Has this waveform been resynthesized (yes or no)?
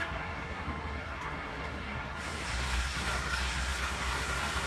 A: yes